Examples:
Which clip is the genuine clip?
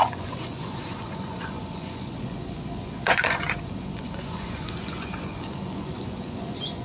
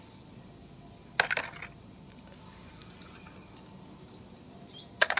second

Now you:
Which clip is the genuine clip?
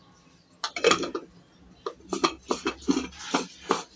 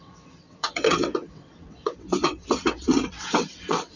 first